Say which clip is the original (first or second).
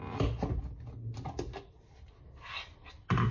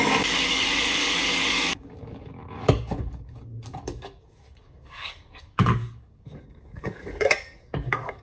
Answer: first